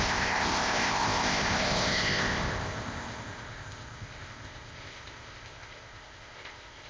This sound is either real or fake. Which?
fake